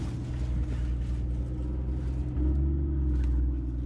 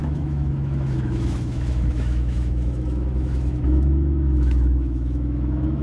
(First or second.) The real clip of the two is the first